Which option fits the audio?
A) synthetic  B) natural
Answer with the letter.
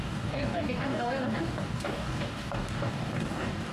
A